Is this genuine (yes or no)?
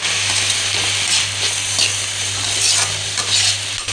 yes